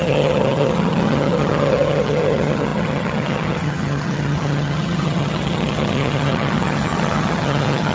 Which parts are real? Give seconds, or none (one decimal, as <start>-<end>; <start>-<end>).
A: none